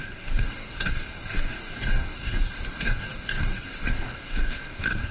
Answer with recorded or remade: remade